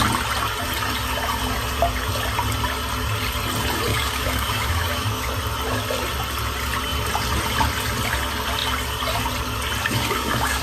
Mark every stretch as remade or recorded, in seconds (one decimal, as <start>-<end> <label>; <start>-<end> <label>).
0.0-3.9 recorded; 3.9-5.3 remade; 5.3-9.8 recorded; 9.8-10.6 remade